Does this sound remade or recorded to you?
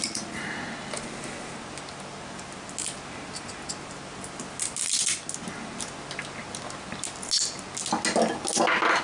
recorded